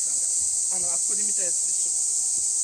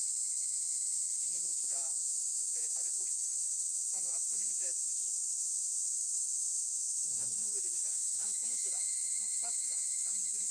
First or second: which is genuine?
first